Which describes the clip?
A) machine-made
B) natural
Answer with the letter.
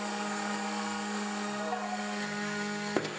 A